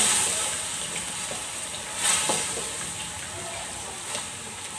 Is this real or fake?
real